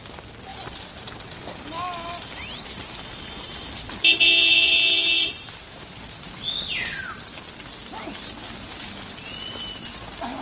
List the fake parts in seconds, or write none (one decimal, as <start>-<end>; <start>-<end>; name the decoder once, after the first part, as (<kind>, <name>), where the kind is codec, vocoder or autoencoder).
none